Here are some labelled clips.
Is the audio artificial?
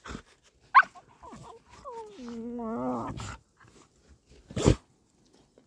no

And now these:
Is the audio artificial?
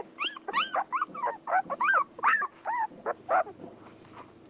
yes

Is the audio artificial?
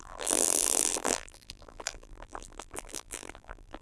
yes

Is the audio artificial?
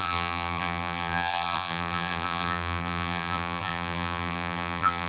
yes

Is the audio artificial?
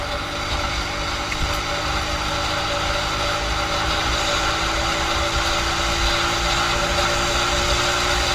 no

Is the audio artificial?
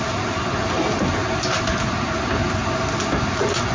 no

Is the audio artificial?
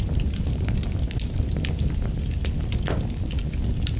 no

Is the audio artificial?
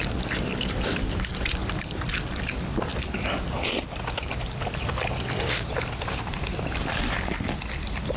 yes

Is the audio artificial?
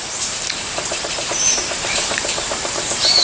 yes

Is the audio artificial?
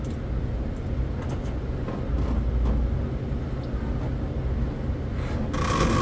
no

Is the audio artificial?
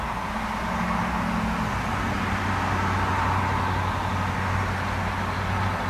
no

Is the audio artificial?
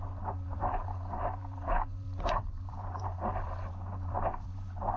yes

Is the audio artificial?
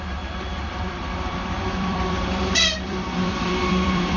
yes